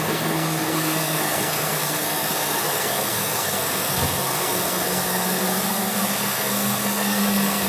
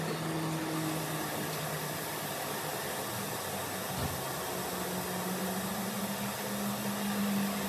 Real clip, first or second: second